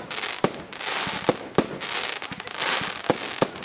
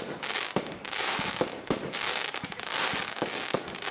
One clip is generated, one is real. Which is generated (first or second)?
second